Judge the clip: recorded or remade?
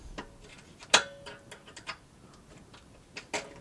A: recorded